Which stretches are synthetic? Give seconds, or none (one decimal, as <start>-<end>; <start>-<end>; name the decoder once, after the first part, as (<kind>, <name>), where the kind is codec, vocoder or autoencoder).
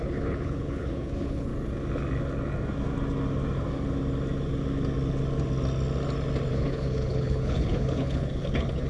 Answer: 0.0-1.5 (codec, HILCodec); 6.5-8.9